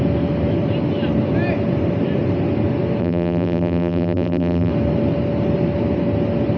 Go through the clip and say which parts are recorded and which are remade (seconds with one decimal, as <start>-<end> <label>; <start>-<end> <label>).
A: 0.0-3.0 recorded; 3.0-4.7 remade; 4.7-6.6 recorded

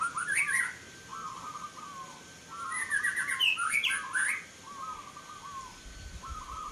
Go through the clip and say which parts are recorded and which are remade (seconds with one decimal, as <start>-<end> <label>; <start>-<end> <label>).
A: 0.0-6.7 recorded